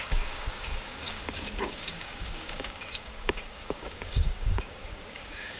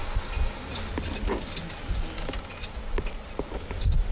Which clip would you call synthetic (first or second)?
first